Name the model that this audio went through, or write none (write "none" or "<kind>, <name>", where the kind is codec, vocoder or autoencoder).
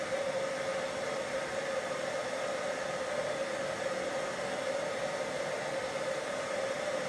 none